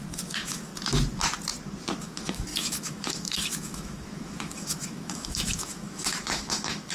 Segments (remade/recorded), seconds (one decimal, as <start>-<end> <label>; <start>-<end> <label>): 0.0-0.7 remade; 0.7-2.0 recorded; 2.0-6.9 remade